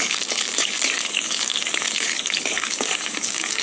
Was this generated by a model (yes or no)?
yes